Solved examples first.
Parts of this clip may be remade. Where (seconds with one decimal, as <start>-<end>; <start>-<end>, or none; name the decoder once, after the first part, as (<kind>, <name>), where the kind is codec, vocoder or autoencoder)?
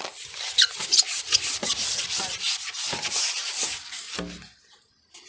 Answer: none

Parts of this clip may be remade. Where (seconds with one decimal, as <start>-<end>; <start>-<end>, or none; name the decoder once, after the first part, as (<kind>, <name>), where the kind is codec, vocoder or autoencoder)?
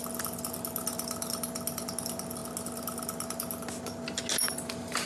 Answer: none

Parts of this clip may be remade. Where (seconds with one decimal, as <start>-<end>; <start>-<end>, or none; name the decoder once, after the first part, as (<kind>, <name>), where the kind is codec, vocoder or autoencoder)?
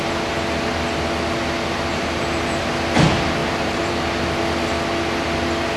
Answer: 1.9-2.6 (vocoder, BigVGAN v2); 3.4-4.0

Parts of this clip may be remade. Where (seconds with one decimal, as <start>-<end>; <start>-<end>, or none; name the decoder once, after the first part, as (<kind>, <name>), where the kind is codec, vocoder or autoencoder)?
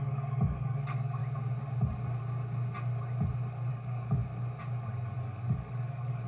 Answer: 0.0-1.2 (codec, DAC); 3.7-4.2; 5.2-6.3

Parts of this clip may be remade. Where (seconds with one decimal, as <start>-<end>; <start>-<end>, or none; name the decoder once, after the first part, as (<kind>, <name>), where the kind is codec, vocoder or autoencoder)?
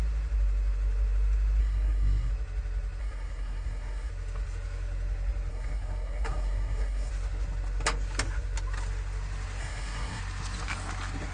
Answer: 1.6-2.3 (codec, SNAC); 3.0-4.1; 5.5-7.1; 9.6-10.2